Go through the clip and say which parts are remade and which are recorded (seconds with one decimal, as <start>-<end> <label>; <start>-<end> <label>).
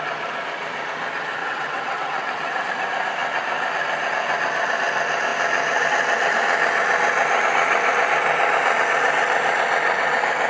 0.0-1.4 recorded; 1.4-2.7 remade; 2.7-10.5 recorded